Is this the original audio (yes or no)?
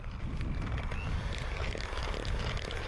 yes